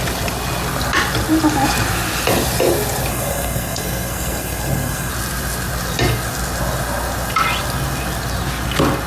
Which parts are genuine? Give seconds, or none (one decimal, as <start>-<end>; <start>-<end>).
0.0-3.1; 5.1-9.1